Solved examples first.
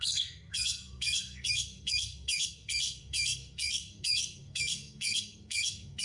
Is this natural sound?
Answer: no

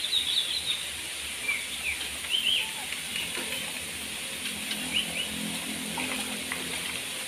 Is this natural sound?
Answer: yes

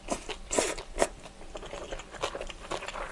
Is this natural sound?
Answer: yes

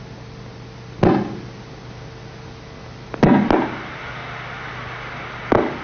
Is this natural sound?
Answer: yes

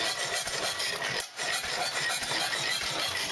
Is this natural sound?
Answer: yes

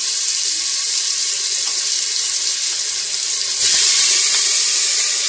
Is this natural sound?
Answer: yes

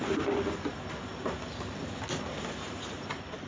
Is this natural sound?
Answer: yes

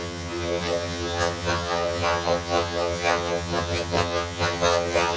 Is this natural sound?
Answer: no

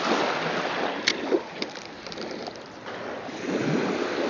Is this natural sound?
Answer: yes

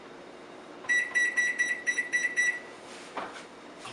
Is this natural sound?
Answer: no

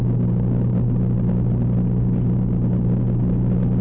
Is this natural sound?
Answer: yes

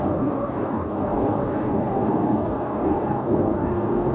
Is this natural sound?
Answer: no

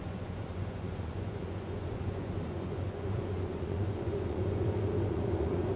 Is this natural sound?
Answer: no